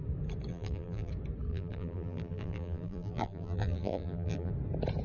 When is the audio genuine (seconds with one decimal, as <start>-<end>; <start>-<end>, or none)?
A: 0.0-0.5; 1.1-1.5; 4.5-5.0